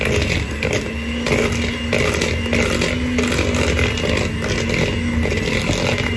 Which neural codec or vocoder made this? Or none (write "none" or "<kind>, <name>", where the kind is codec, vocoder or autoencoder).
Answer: none